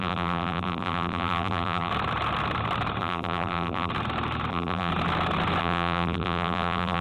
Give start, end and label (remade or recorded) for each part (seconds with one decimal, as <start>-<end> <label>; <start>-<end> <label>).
0.0-1.9 remade; 1.9-3.0 recorded; 3.0-3.9 remade; 3.9-4.5 recorded; 4.5-4.9 remade; 4.9-5.6 recorded; 5.6-7.0 remade